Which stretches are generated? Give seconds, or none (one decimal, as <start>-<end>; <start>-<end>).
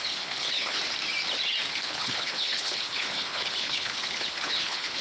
0.0-0.8; 1.7-5.0